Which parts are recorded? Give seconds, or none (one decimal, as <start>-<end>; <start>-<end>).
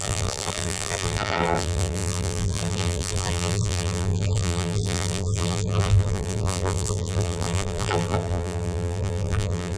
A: none